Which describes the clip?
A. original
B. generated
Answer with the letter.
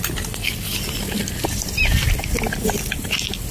B